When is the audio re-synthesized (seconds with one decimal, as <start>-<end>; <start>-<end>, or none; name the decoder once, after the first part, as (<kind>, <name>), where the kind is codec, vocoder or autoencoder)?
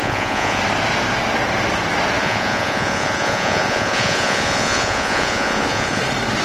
0.0-0.6 (vocoder, Vocos); 2.2-6.0